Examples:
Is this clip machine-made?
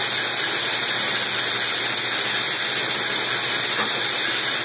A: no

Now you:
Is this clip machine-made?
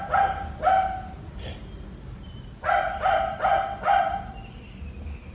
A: no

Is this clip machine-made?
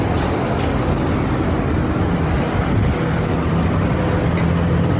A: no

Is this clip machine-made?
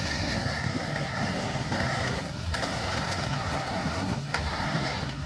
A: yes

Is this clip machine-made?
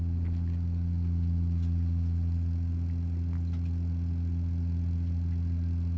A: no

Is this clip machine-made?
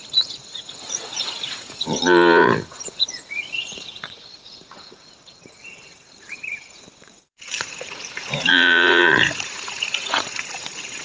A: yes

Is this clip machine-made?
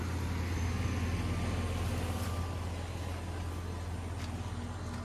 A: no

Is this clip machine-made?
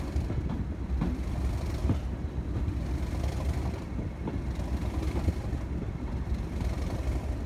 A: no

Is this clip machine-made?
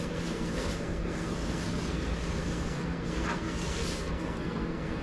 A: yes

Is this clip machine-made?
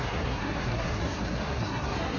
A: yes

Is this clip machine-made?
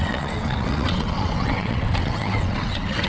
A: yes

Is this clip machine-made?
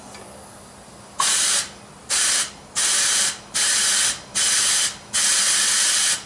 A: no